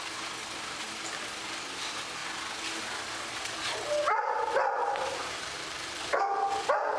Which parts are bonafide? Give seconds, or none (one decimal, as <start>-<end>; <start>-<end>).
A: 0.0-4.8; 6.1-7.0